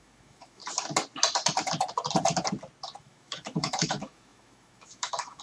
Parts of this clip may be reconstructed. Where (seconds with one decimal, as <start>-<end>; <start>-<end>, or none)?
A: 0.0-0.6; 3.0-5.4

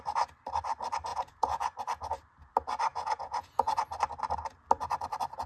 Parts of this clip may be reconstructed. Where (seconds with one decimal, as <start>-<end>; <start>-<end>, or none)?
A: 1.1-1.8; 2.9-3.7

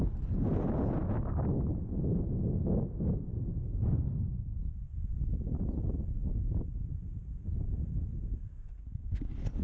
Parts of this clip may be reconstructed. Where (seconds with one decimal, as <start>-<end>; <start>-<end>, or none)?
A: none